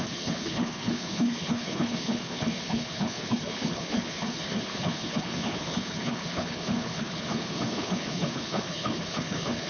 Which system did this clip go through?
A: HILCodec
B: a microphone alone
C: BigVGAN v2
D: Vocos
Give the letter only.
A